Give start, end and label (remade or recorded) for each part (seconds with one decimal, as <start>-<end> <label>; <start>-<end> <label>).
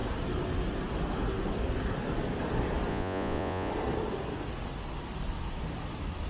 0.0-2.9 recorded; 2.9-3.7 remade; 3.7-6.3 recorded